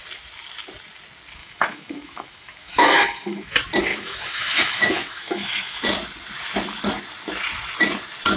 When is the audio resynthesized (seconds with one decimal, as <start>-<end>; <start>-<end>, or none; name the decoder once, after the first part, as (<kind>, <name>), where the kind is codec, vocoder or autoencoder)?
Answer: 1.4-3.5 (autoencoder, DAC-VAE); 3.9-5.8